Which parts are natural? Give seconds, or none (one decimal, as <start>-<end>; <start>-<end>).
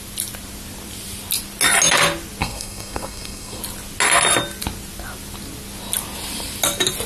0.0-2.4; 3.6-7.1